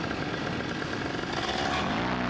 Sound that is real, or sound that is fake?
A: real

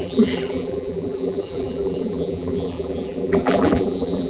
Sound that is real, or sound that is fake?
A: fake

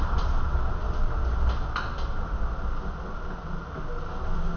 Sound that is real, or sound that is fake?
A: real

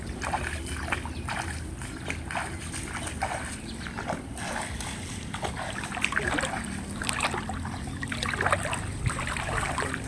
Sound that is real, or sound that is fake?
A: real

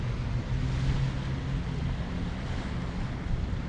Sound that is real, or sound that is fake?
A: real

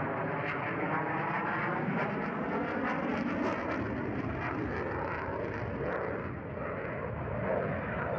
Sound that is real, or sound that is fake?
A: real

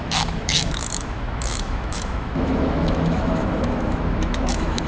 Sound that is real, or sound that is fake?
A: fake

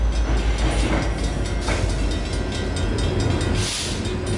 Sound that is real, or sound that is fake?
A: real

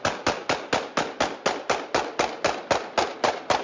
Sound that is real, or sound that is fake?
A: real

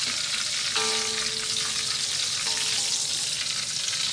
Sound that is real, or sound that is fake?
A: real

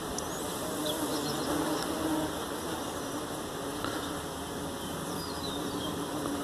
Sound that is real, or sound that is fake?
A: real